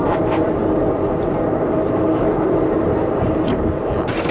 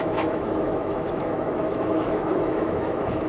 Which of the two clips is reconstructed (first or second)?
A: second